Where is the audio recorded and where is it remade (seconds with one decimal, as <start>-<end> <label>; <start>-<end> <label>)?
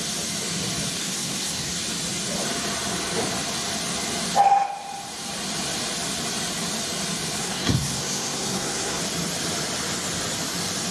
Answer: 0.0-1.0 recorded; 1.0-1.7 remade; 1.7-7.4 recorded; 7.4-9.0 remade; 9.0-10.9 recorded